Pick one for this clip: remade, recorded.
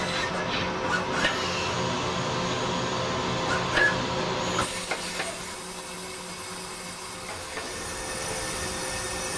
recorded